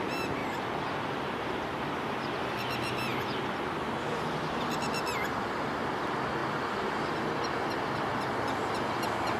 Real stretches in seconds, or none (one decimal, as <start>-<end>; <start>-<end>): 0.0-9.4